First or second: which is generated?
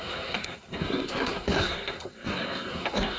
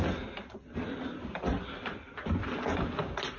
first